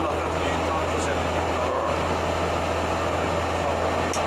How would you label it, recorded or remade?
recorded